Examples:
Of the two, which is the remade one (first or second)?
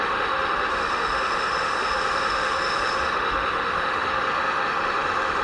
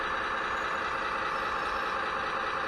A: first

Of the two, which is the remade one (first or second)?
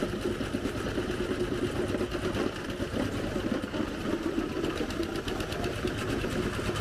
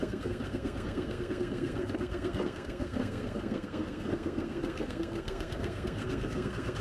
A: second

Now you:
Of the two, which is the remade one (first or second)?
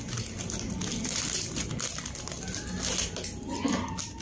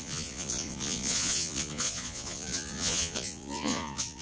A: second